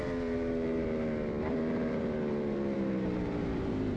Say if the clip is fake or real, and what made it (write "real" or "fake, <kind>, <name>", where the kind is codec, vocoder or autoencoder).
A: fake, vocoder, BigVGAN v2